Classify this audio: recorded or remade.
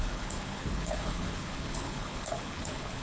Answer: remade